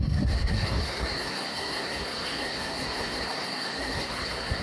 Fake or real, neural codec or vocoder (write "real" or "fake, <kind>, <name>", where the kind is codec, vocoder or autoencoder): fake, codec, SNAC